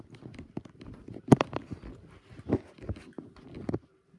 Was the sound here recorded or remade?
recorded